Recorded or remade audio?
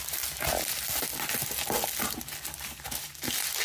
recorded